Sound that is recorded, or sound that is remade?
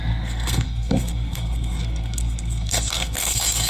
remade